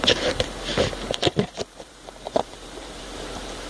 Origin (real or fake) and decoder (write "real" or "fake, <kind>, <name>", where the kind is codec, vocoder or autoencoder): fake, vocoder, BigVGAN v2